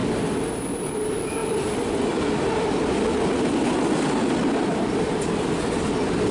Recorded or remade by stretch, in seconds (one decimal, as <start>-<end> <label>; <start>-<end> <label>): 0.0-1.4 recorded; 1.4-5.2 remade; 5.2-6.3 recorded